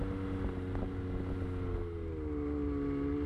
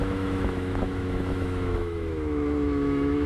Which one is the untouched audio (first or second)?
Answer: first